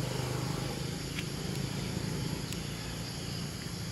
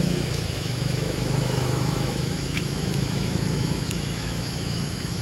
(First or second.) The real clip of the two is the first